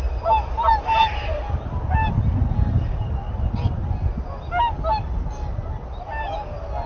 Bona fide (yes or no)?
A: yes